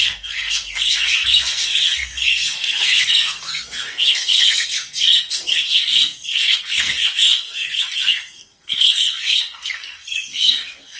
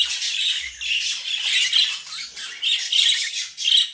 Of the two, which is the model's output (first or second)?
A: first